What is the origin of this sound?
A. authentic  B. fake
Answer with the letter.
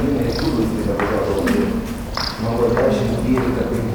A